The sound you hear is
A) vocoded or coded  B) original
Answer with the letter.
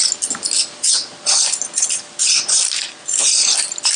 B